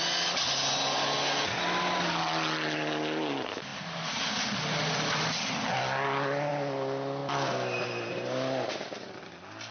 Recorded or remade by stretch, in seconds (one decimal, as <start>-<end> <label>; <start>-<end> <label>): 0.0-9.7 recorded